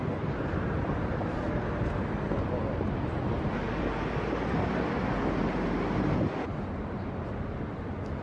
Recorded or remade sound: recorded